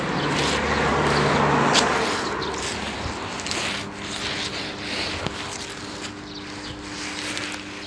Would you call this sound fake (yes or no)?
no